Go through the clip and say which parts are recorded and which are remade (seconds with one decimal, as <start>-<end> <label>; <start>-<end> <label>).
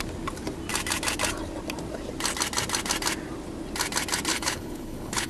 0.0-4.3 recorded; 4.3-5.3 remade